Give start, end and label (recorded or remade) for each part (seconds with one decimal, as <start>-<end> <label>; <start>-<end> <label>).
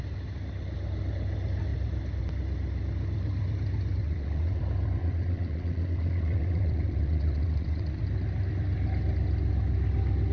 0.0-4.0 recorded; 4.0-4.6 remade; 4.6-5.0 recorded; 5.0-8.0 remade; 8.0-10.3 recorded